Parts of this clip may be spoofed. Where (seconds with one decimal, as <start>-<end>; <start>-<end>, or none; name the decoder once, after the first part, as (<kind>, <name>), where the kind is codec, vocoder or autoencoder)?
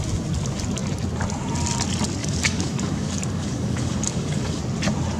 2.2-4.6 (codec, DAC)